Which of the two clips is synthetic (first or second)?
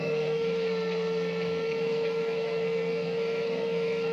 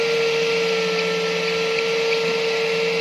first